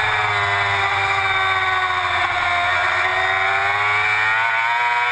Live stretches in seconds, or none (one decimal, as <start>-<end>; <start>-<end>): 0.0-5.1

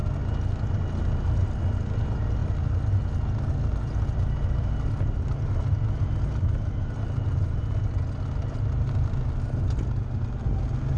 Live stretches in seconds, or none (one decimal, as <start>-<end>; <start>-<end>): 0.0-11.0

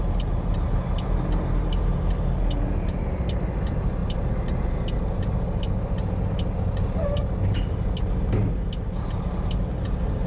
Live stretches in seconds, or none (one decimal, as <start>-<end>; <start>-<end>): 0.0-10.3

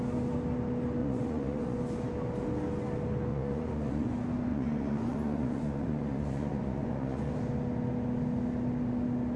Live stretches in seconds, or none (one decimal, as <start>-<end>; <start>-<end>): 0.0-1.0; 1.8-3.3; 4.1-4.5; 7.3-9.4

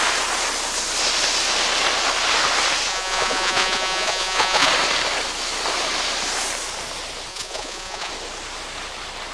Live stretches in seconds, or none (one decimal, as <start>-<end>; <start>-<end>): 0.0-2.9; 4.7-7.3; 8.1-9.3

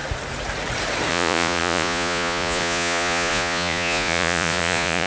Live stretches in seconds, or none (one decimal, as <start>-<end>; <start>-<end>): 0.0-1.1

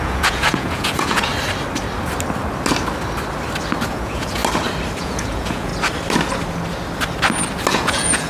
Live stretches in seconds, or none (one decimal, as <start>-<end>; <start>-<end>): 1.3-3.9; 4.4-5.0; 5.7-7.7